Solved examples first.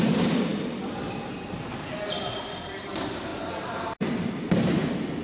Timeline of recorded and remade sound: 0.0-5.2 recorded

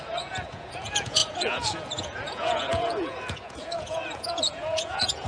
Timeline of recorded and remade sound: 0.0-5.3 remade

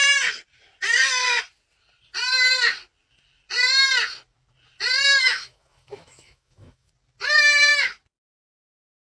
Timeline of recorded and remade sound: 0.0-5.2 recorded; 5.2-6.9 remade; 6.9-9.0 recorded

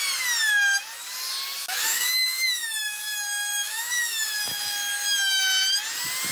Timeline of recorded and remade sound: 0.0-1.6 recorded; 1.6-5.4 remade; 5.4-6.3 recorded

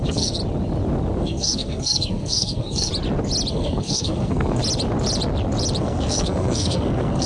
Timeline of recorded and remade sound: 0.0-0.4 remade; 0.4-1.2 recorded; 1.2-2.9 remade; 2.9-3.5 recorded; 3.5-4.6 remade; 4.6-5.8 recorded; 5.8-7.3 remade

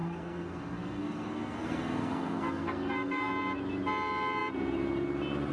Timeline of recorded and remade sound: 0.0-3.3 remade; 3.3-5.5 recorded

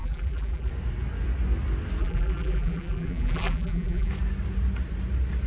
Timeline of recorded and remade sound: 0.0-0.7 remade; 0.7-2.0 recorded; 2.0-4.1 remade; 4.1-5.5 recorded

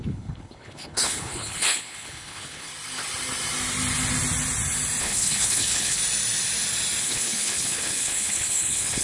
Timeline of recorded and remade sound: 0.0-2.7 remade; 2.7-5.0 recorded; 5.0-6.0 remade; 6.0-7.0 recorded; 7.0-9.0 remade